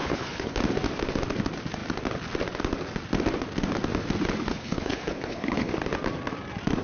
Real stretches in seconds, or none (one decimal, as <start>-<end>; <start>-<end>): 0.6-4.5; 5.7-6.8